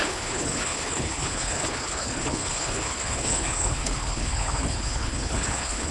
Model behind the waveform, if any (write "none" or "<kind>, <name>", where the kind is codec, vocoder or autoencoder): codec, HILCodec